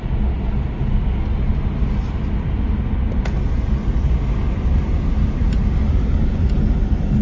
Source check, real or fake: real